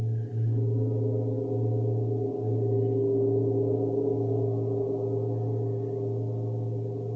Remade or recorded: recorded